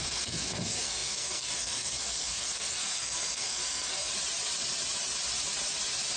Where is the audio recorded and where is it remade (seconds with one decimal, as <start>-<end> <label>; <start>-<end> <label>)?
0.0-4.1 remade; 4.1-6.2 recorded